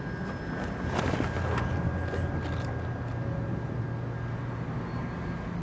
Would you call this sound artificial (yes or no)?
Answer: no